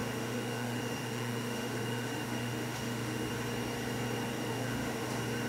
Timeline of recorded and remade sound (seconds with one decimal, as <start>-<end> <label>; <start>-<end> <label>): 0.0-3.3 remade; 3.3-4.5 recorded; 4.5-5.1 remade; 5.1-5.5 recorded